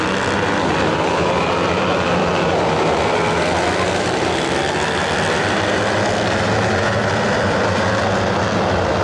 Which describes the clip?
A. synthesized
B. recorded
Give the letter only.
A